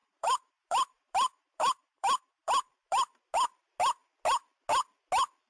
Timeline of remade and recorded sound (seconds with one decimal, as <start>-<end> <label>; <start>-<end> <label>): 0.0-3.3 remade; 3.3-5.5 recorded

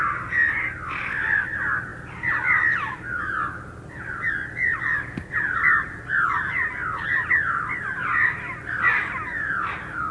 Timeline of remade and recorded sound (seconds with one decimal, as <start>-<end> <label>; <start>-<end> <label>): 0.0-10.1 recorded

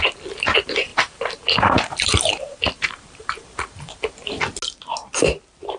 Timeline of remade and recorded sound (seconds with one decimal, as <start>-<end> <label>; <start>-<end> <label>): 0.0-0.9 recorded; 0.9-4.4 remade; 4.4-5.8 recorded

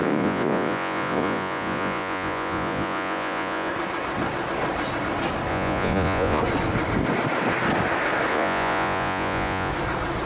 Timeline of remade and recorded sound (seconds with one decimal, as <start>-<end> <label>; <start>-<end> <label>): 0.0-3.7 remade; 3.7-5.5 recorded; 5.5-6.4 remade; 6.4-8.3 recorded; 8.3-9.7 remade; 9.7-10.3 recorded

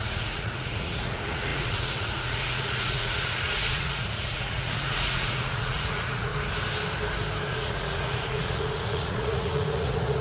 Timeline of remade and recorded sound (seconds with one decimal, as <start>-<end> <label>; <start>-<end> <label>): 0.0-6.3 remade; 6.3-7.5 recorded; 7.5-10.2 remade

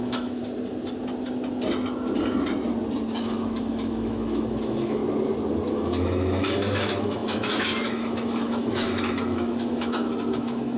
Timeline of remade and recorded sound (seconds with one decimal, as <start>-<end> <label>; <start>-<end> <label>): 0.0-0.4 remade; 0.4-3.2 recorded; 3.2-5.0 remade; 5.0-5.7 recorded; 5.7-10.8 remade

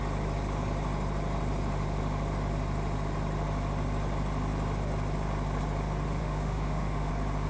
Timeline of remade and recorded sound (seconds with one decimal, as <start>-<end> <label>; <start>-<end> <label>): 0.0-6.2 recorded; 6.2-7.1 remade; 7.1-7.5 recorded